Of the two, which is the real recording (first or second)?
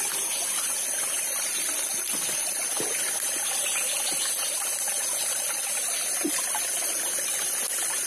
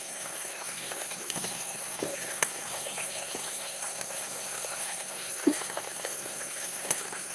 first